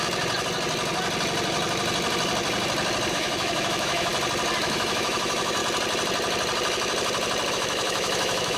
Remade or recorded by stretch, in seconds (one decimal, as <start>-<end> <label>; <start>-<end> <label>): 0.0-3.1 recorded; 3.1-4.1 remade; 4.1-4.6 recorded; 4.6-5.6 remade; 5.6-7.5 recorded; 7.5-8.6 remade